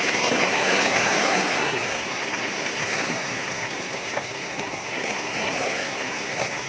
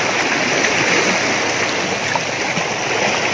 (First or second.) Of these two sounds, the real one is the second